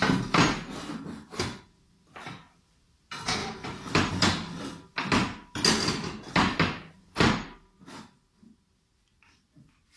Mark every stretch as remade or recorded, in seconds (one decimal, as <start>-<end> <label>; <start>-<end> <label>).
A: 0.0-10.0 recorded